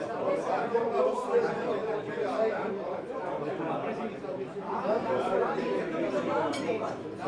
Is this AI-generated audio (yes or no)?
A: yes